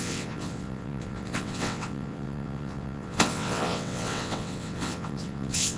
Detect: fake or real fake